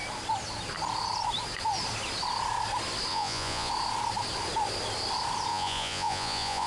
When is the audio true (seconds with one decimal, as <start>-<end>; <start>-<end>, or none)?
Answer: 0.0-3.1; 3.7-5.5